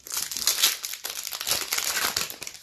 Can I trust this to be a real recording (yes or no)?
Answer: yes